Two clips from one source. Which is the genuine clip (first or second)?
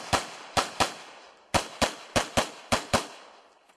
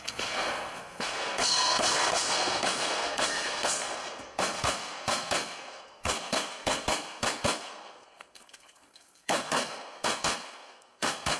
first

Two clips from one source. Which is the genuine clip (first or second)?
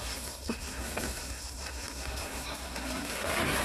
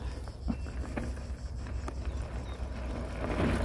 second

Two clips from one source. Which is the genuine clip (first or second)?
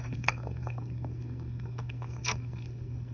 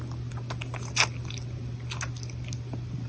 second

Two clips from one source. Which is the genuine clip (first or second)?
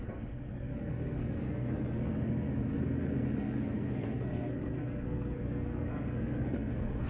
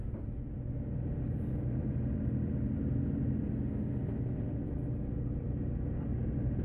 second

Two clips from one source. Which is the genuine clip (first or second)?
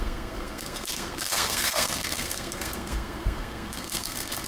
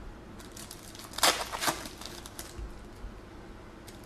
second